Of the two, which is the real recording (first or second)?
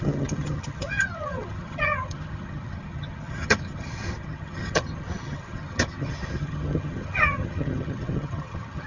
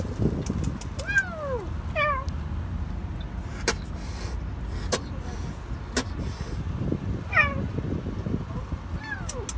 second